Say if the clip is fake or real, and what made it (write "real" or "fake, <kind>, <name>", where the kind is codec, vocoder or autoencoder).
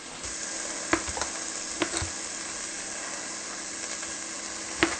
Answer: real